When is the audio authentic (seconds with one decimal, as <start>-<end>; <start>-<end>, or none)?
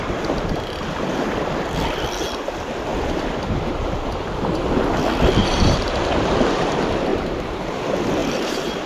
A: 0.0-5.4; 6.4-7.1; 7.8-8.2